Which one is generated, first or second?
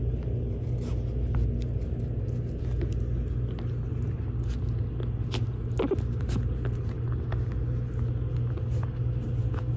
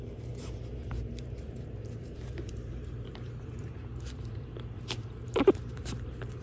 second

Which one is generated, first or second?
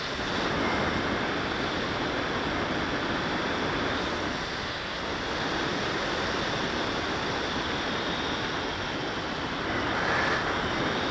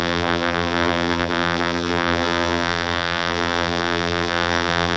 second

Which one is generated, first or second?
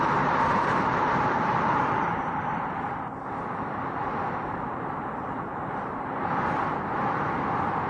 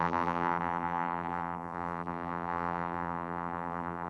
second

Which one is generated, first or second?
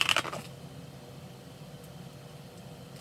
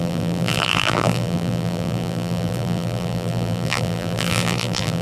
second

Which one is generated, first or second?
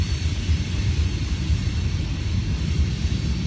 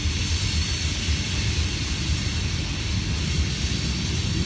first